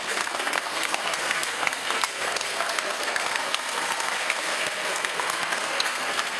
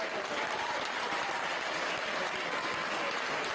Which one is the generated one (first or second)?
first